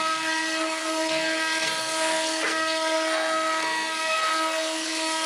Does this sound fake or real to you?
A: fake